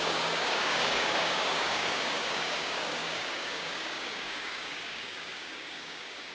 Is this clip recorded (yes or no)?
no